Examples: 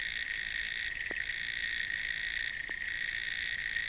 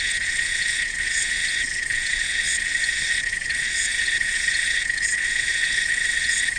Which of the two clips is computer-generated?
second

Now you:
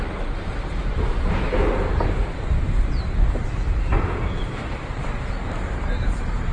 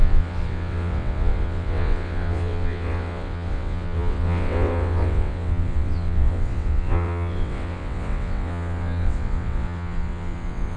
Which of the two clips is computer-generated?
second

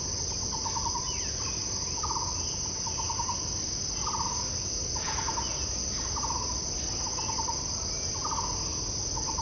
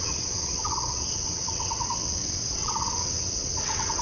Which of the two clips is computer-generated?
second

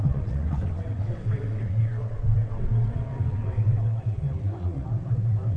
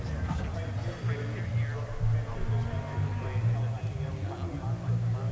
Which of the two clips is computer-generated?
first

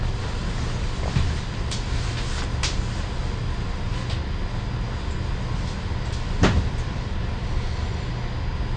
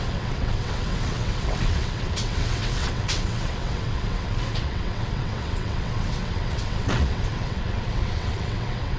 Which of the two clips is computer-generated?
second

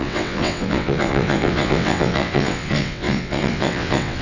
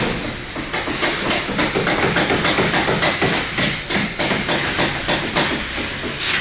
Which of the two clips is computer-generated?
first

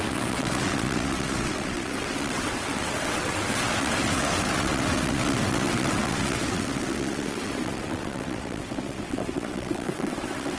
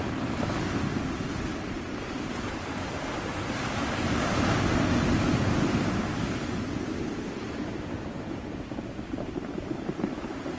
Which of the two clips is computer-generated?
first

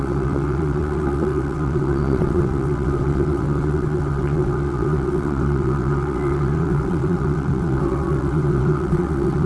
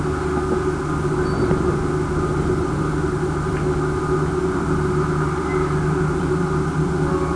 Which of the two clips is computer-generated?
first